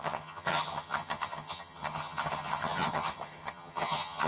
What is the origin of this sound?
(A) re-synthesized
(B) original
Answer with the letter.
A